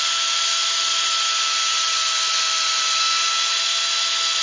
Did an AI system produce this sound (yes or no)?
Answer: no